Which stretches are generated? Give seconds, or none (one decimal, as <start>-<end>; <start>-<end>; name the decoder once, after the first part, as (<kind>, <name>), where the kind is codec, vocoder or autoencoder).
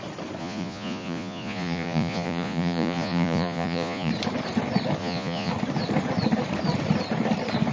0.4-4.1 (vocoder, Vocos); 5.0-5.5